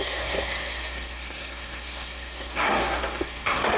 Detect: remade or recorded remade